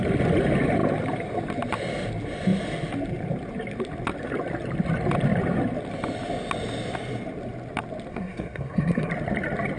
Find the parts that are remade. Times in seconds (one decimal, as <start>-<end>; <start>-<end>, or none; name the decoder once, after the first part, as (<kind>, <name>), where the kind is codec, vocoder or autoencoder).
8.1-9.1 (codec, SNAC)